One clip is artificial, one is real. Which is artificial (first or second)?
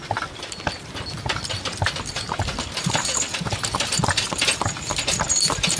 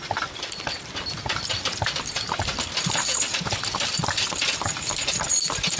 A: second